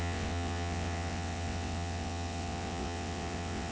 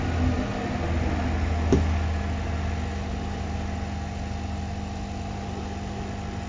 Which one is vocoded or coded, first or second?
first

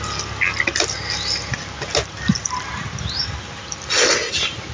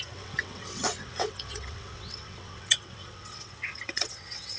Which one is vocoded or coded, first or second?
second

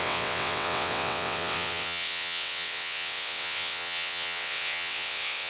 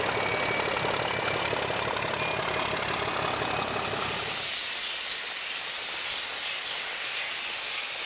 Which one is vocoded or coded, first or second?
first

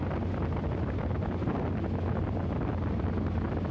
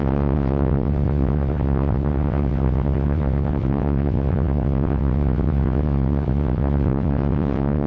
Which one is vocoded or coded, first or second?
second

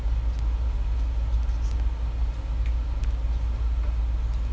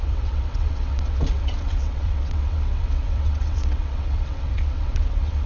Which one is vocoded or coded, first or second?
second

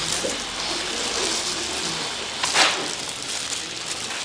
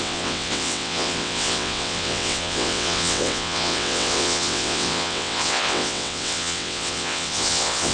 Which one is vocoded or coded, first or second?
second